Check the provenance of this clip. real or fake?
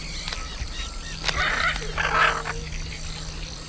real